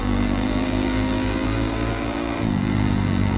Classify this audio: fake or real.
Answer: fake